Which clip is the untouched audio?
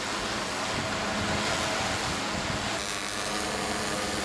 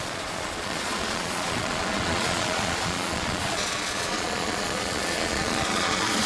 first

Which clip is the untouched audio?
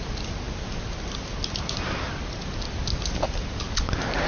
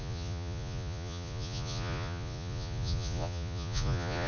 first